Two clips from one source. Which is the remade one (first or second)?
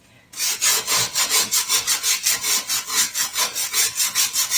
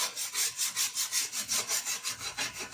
first